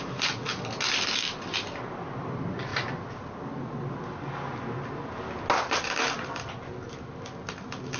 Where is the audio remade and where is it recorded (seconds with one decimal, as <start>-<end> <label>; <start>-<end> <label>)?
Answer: 0.0-8.0 recorded